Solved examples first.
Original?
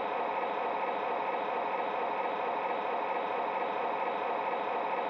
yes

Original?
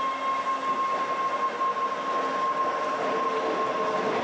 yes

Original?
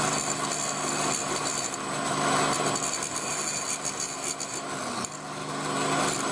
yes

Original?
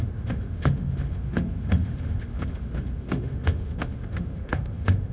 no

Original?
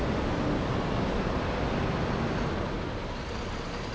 yes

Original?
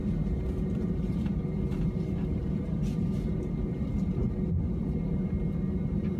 no